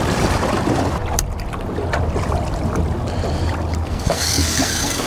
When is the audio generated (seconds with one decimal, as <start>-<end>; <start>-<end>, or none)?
3.8-5.1